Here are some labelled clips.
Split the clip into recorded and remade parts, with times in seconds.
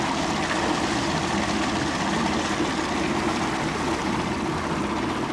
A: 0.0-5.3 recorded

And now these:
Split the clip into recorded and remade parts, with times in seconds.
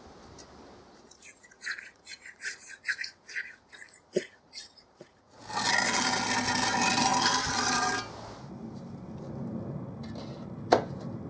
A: 0.0-1.0 recorded; 1.0-5.4 remade; 5.4-11.3 recorded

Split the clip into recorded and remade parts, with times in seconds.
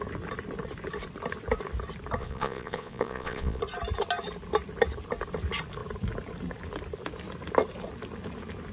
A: 0.0-2.2 recorded; 2.2-3.6 remade; 3.6-8.7 recorded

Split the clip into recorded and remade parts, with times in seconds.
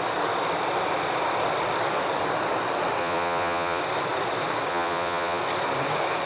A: 0.0-3.0 recorded; 3.0-3.8 remade; 3.8-4.7 recorded; 4.7-5.4 remade; 5.4-6.3 recorded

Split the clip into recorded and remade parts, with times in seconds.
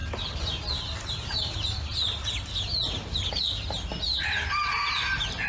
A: 0.0-5.5 recorded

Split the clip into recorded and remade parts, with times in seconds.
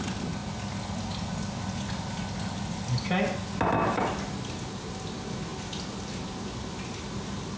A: 0.0-7.6 recorded